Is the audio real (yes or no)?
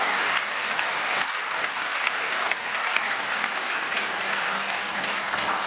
no